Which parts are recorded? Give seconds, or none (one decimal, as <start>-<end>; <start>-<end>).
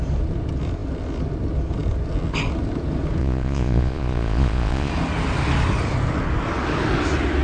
0.0-3.2; 4.9-7.4